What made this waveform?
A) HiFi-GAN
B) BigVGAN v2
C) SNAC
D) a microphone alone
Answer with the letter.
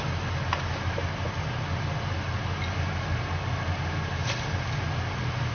D